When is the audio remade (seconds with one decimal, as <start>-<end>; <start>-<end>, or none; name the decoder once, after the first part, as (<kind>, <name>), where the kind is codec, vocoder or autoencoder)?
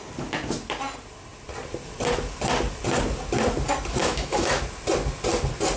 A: 4.0-4.6 (autoencoder, DAC-VAE)